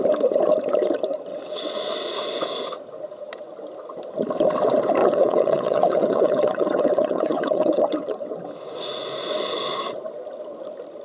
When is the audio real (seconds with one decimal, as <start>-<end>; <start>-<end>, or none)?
0.0-1.3; 1.9-5.0; 8.3-11.0